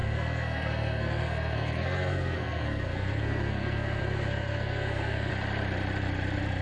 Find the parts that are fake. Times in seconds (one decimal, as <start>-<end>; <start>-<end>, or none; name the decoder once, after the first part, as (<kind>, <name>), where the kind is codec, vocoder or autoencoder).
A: 0.0-5.3 (codec, SNAC)

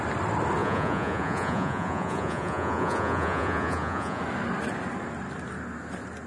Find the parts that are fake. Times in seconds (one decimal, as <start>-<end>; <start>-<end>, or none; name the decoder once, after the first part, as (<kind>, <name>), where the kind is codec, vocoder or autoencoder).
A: 0.6-4.2 (vocoder, Vocos)

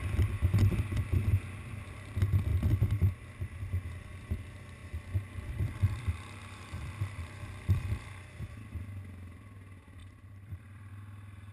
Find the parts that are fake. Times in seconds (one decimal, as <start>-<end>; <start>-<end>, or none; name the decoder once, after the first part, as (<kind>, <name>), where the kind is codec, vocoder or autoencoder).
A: 4.8-8.0 (vocoder, BigVGAN v2); 10.0-10.9

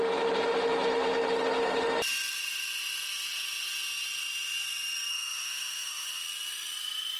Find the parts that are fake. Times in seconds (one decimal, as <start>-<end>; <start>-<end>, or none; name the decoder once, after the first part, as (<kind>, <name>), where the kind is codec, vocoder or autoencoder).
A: 5.1-6.2 (autoencoder, DAC-VAE)

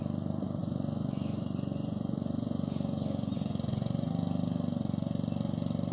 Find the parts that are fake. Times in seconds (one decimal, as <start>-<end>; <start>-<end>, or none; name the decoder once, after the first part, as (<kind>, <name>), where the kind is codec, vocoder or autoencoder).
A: 0.6-4.1 (vocoder, Vocos)

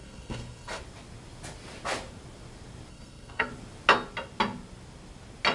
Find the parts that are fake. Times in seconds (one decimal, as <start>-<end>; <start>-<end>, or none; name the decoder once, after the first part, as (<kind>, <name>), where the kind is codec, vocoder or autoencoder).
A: 0.0-0.8 (codec, SNAC); 2.9-3.5

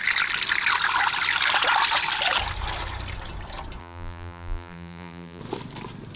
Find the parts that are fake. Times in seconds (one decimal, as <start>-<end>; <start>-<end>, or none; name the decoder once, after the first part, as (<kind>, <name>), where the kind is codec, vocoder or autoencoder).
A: 3.8-5.4 (vocoder, BigVGAN v2)